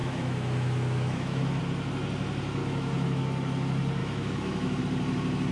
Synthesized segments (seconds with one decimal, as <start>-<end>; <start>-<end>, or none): 0.0-1.6; 2.6-3.2; 4.0-4.8